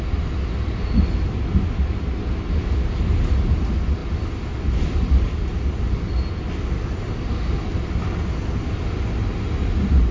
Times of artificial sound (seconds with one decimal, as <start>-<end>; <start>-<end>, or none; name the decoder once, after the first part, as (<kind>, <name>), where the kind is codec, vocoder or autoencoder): none